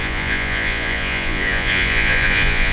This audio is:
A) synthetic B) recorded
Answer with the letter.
A